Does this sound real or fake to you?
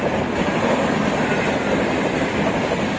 real